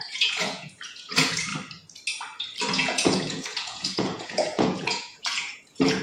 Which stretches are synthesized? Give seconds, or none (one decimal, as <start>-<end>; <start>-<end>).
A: 0.0-1.5; 2.7-6.0